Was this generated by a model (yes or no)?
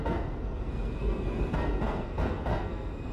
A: yes